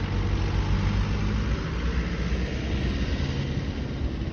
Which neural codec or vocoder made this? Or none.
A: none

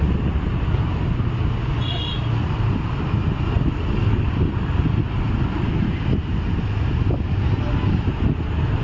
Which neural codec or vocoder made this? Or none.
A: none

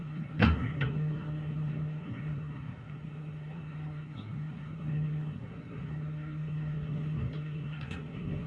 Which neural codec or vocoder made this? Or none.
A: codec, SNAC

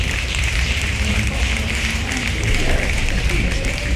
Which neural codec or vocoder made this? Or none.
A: none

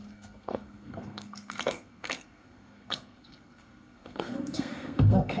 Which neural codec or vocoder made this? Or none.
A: codec, SNAC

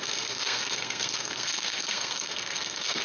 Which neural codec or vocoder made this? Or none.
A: codec, SNAC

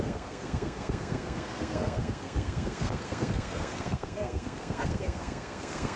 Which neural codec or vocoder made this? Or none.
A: codec, SNAC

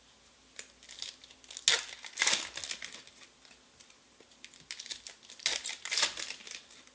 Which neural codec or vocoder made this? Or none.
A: none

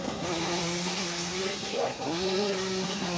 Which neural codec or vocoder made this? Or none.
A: codec, SNAC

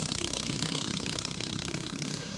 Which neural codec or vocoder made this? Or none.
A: codec, SNAC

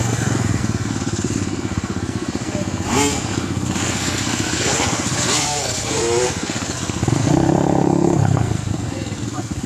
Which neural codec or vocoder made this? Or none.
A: codec, SNAC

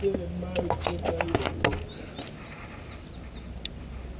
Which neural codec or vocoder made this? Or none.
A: none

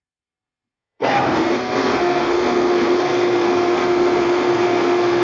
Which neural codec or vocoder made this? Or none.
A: codec, SNAC